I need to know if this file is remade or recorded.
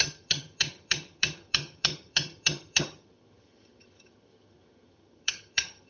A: remade